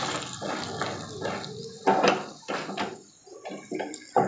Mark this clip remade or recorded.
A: recorded